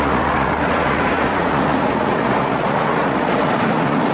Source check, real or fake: fake